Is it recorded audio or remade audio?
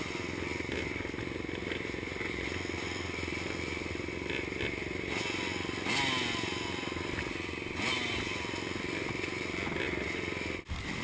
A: recorded